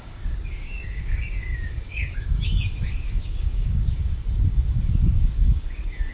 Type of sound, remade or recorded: remade